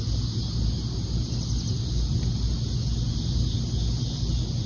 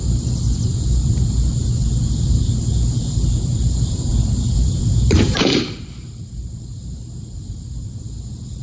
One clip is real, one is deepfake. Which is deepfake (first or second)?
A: second